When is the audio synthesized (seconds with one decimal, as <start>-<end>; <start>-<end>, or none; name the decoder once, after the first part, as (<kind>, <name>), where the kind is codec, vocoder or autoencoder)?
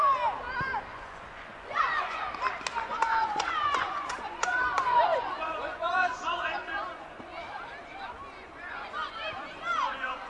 0.9-2.2 (vocoder, Vocos); 2.8-7.3; 8.3-10.3